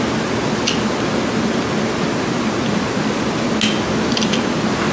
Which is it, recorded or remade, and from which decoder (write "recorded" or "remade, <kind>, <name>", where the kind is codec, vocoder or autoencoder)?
recorded